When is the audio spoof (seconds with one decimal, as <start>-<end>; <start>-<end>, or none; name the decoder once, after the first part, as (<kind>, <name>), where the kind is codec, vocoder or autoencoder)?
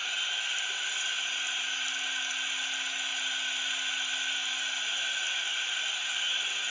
none